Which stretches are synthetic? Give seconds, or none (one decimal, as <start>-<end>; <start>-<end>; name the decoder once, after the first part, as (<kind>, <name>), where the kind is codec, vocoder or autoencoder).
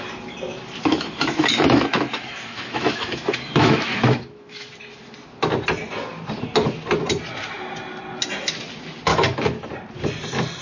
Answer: 0.8-4.7 (autoencoder, DAC-VAE); 9.1-9.7